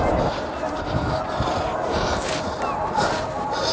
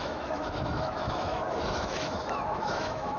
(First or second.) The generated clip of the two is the second